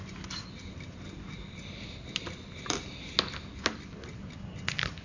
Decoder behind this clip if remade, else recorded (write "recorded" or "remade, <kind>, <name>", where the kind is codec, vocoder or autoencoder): recorded